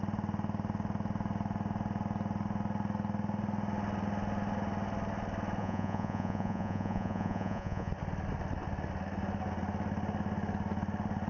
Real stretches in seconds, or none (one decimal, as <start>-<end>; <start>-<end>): 0.0-5.6; 7.9-11.3